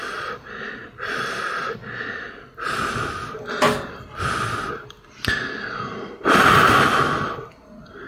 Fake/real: real